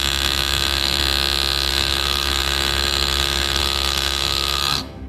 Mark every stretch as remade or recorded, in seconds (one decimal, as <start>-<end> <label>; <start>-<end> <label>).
0.0-1.0 remade; 1.0-1.7 recorded; 1.7-5.1 remade